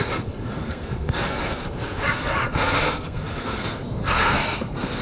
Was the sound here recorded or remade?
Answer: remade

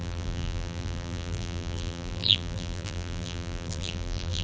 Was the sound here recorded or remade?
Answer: remade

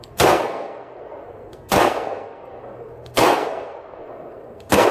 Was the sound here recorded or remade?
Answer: remade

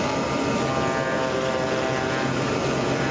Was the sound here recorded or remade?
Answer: recorded